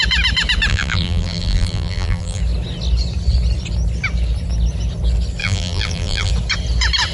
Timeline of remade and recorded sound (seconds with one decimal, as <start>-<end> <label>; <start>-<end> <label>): 0.0-0.7 recorded; 0.7-2.4 remade; 2.4-5.4 recorded; 5.4-6.3 remade; 6.3-7.1 recorded